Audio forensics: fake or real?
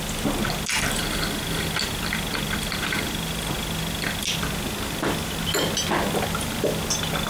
real